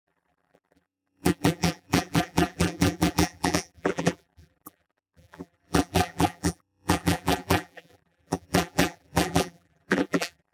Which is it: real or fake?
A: fake